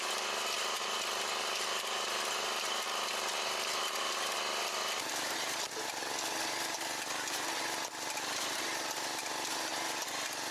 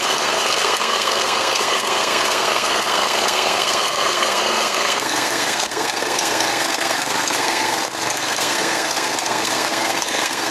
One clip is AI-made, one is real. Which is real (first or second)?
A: first